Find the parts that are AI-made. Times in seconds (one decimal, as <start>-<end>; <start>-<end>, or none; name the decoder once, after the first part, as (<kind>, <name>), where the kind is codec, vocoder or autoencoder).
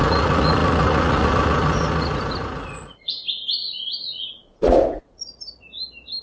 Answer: 0.0-3.2 (vocoder, Vocos); 4.0-5.2